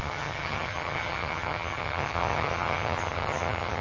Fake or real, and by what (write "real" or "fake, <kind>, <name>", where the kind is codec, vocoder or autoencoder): fake, vocoder, HiFi-GAN